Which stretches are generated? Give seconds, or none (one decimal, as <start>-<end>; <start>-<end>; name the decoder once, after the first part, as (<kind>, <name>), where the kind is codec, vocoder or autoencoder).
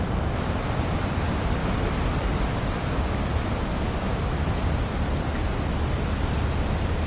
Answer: 0.0-1.6 (vocoder, BigVGAN v2); 2.1-4.1; 6.6-7.1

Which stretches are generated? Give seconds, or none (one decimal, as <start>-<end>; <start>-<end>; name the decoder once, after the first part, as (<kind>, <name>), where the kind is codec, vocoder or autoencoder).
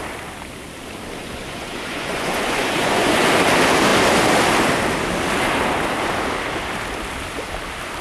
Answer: 1.2-3.3 (vocoder, Vocos)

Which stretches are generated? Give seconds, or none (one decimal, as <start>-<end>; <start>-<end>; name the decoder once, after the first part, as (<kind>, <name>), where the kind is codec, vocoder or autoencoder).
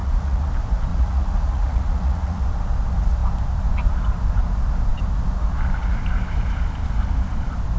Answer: 0.0-0.5 (vocoder, Vocos); 0.9-2.4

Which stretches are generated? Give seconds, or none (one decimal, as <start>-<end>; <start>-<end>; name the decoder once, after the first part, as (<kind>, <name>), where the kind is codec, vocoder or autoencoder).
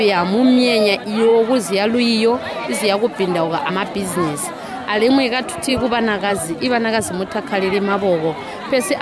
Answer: none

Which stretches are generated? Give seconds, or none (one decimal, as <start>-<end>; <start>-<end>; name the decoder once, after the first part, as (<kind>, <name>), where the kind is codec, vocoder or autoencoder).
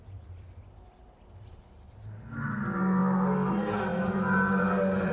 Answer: none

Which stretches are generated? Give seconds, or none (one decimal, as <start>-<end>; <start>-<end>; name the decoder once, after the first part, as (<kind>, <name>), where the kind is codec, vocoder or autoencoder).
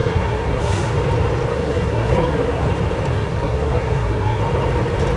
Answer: 0.0-0.9 (codec, SNAC); 1.5-2.7; 3.1-4.4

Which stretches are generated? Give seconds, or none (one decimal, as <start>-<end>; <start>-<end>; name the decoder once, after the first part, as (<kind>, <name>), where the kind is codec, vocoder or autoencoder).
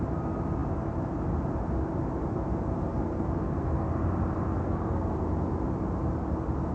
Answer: 2.9-3.9 (codec, SNAC); 4.6-5.3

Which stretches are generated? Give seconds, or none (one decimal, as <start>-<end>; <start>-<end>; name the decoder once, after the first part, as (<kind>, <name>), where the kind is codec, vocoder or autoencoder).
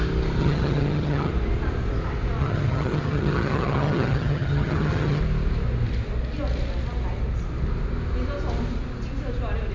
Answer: 0.4-1.3 (vocoder, HiFi-GAN); 2.4-5.2